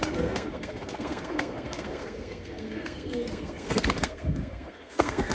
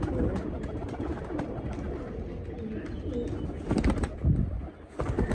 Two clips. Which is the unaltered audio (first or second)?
second